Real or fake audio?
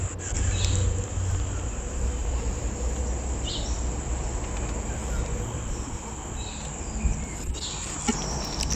real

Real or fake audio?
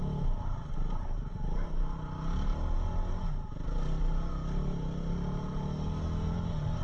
real